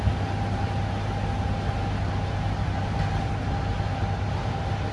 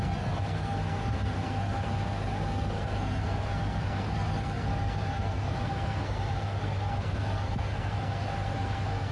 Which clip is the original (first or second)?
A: first